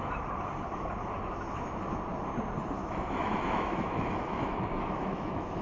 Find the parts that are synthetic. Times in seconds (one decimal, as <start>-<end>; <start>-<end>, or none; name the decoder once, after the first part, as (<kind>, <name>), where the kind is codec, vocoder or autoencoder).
2.8-5.6 (autoencoder, DAC-VAE)